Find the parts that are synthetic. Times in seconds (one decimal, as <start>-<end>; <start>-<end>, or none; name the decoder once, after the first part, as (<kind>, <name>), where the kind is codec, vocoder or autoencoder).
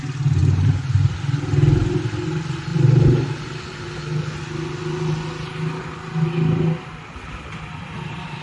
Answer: 0.4-1.2 (vocoder, BigVGAN v2); 2.7-3.2